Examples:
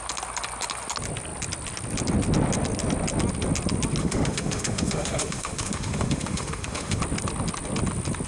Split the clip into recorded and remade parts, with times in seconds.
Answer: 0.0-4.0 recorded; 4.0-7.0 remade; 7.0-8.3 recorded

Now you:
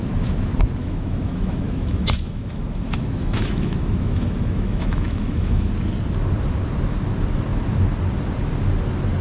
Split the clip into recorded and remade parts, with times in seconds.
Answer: 0.0-0.8 recorded; 0.8-5.7 remade; 5.7-9.2 recorded

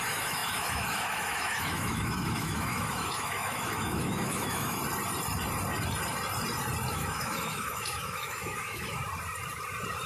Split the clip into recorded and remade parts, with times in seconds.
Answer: 0.0-4.8 remade; 4.8-6.9 recorded; 6.9-9.0 remade; 9.0-10.1 recorded

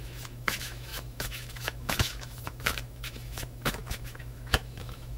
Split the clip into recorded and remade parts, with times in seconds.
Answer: 0.0-5.2 remade